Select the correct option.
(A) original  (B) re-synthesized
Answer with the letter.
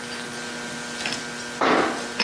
A